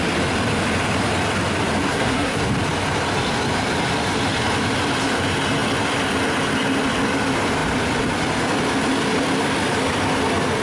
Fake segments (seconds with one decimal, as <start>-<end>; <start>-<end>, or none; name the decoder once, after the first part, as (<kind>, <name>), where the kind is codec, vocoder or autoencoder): 1.9-2.4 (codec, SNAC)